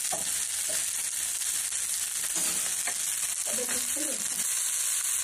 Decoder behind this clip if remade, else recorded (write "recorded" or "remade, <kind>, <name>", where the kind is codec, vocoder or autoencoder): recorded